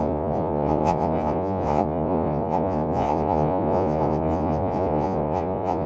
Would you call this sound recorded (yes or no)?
no